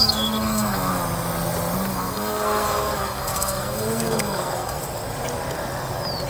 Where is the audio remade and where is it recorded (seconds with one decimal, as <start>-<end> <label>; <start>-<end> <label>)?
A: 0.0-0.9 remade; 0.9-1.9 recorded; 1.9-4.8 remade; 4.8-6.3 recorded